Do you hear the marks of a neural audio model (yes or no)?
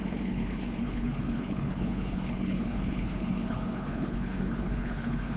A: yes